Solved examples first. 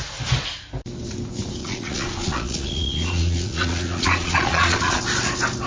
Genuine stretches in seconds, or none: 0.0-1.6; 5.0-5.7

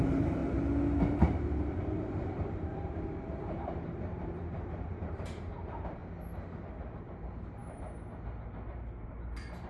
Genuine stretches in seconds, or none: 0.4-1.0; 6.0-7.0; 7.6-8.7

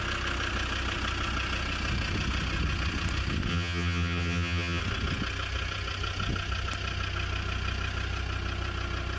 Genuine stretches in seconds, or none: 0.0-3.5; 4.8-9.2

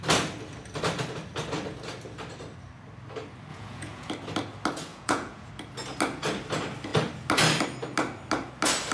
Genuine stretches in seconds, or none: 0.0-3.5; 4.1-4.9; 5.5-8.9

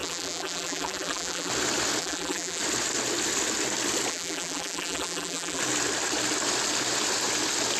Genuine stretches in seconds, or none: 1.5-2.0; 2.6-4.1; 5.6-7.8

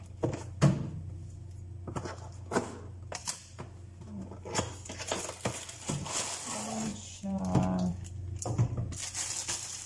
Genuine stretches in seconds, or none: 0.0-6.9; 7.4-9.9